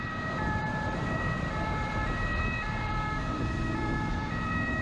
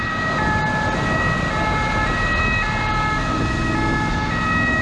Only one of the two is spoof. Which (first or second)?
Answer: first